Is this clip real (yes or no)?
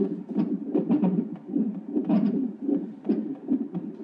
no